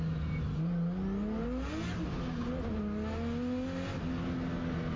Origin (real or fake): real